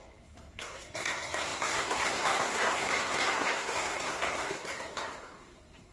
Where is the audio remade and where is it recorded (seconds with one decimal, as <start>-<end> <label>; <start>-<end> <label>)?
0.0-5.9 remade